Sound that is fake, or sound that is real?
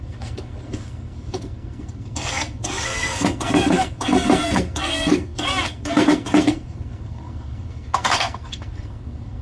fake